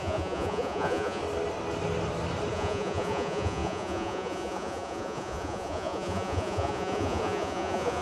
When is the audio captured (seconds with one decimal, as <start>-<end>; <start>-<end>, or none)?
1.2-2.5